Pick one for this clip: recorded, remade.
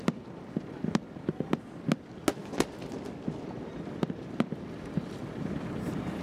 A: recorded